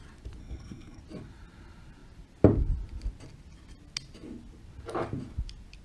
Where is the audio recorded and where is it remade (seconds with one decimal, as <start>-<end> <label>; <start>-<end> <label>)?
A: 0.0-0.4 recorded; 0.4-1.0 remade; 1.0-5.8 recorded